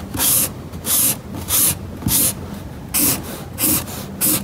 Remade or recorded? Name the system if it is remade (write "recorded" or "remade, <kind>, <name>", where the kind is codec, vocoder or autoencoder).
recorded